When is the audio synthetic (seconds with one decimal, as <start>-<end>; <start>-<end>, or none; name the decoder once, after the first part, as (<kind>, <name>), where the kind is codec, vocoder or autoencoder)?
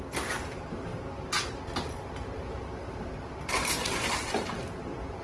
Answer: 0.0-0.9 (vocoder, BigVGAN v2); 2.4-5.2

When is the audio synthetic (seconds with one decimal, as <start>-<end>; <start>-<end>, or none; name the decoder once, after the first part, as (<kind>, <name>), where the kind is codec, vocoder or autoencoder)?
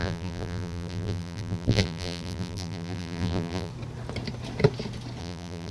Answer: 0.0-3.7 (vocoder, BigVGAN v2); 5.2-5.7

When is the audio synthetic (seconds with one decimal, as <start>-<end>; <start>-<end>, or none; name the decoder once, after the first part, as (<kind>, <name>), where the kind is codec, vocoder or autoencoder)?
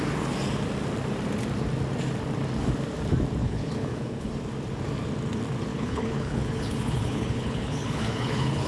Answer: 3.4-4.3 (codec, HILCodec); 5.7-8.7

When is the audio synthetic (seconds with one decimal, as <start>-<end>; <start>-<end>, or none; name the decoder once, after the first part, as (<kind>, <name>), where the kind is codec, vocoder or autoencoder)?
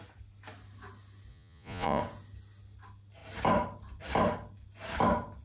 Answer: 1.3-2.0 (vocoder, Vocos)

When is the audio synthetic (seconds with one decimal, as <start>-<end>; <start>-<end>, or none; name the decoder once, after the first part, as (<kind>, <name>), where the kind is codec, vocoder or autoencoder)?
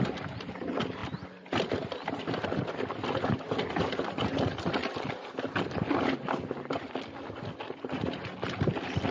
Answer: none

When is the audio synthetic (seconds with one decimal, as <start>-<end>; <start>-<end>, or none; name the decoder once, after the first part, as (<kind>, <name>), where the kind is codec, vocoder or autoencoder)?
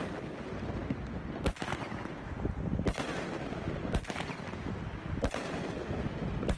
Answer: none